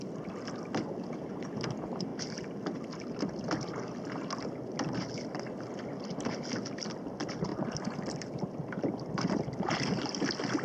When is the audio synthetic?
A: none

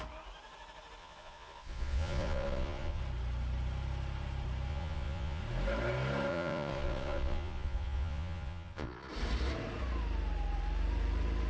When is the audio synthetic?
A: 1.0-3.0 (vocoder, Vocos); 4.7-5.4; 6.3-9.1